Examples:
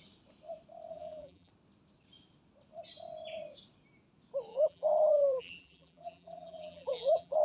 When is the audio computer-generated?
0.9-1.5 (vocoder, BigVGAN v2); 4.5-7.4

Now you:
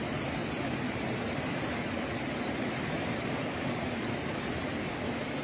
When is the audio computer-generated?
none

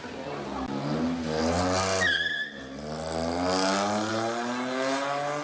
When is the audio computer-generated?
none

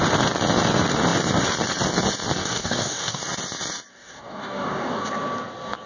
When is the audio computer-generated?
2.4-3.2 (codec, DAC); 3.9-5.1

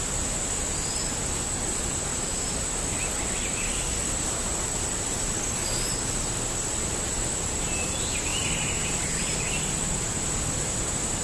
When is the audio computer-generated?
2.1-2.8 (vocoder, BigVGAN v2); 8.3-9.4

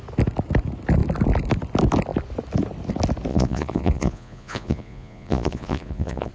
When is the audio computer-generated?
3.3-6.3 (vocoder, Vocos)

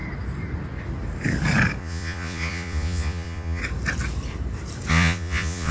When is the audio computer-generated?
1.8-3.6 (vocoder, Vocos); 4.9-5.7

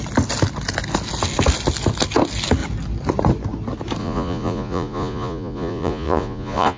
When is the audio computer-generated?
4.0-6.8 (vocoder, Vocos)